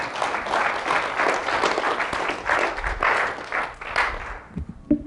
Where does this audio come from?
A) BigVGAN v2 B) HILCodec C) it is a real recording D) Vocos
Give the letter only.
C